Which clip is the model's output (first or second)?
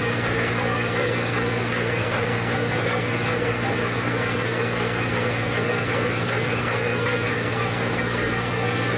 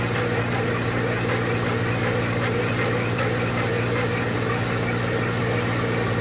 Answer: first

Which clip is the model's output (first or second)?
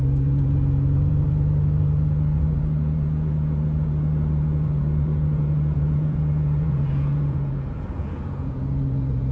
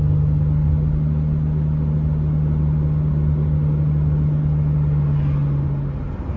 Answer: first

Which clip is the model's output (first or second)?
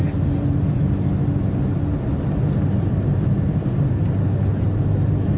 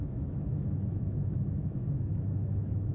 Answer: second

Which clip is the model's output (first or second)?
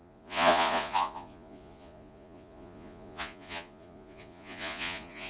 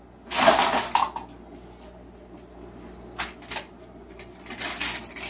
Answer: first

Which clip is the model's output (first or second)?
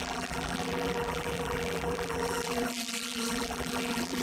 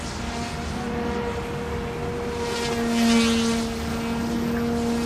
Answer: first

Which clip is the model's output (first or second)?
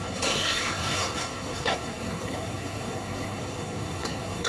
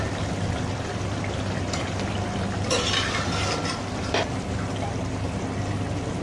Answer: first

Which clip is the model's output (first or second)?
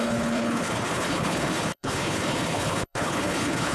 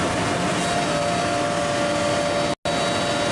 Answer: first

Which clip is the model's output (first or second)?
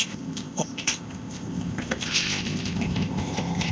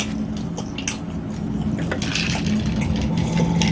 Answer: first